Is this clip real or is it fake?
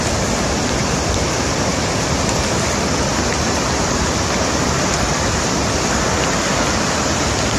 real